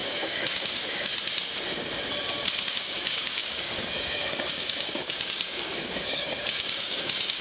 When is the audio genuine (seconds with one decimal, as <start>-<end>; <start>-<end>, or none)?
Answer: 1.1-2.7